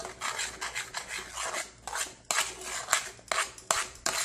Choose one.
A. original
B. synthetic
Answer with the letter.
A